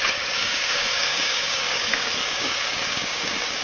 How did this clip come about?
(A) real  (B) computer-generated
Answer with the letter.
B